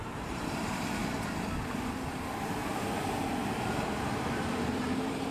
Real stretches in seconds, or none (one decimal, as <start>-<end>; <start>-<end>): 1.0-1.9; 2.6-3.3